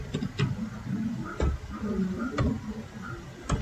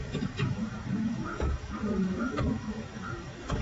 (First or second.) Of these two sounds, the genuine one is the first